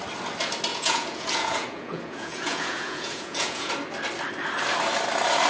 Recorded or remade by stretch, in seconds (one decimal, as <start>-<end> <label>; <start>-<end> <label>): 0.0-0.7 recorded; 0.7-3.7 remade; 3.7-5.5 recorded